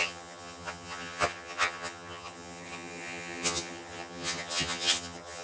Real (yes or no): no